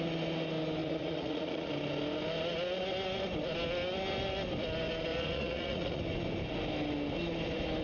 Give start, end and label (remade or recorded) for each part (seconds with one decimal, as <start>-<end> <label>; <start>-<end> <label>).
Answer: 0.0-0.8 recorded; 0.8-1.7 remade; 1.7-5.1 recorded; 5.1-6.0 remade; 6.0-7.8 recorded